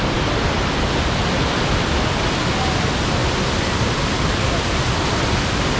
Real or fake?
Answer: real